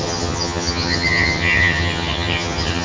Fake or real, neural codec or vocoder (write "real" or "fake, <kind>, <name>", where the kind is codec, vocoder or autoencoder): fake, vocoder, HiFi-GAN